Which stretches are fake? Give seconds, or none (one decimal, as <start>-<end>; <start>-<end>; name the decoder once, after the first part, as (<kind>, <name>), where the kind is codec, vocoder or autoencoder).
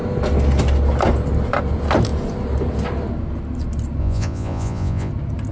4.0-5.1 (vocoder, Vocos)